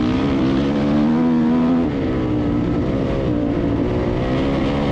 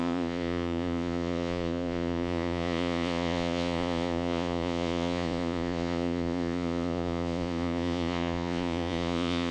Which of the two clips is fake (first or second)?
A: second